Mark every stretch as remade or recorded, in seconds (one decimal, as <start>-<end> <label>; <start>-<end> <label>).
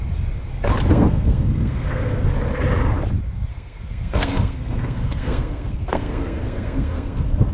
0.0-0.9 recorded; 0.9-2.3 remade; 2.3-3.5 recorded; 3.5-7.5 remade